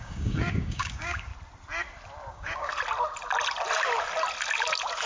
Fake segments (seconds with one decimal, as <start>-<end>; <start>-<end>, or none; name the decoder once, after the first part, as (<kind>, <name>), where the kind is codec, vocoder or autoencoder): 0.0-1.3 (codec, DAC); 2.3-2.7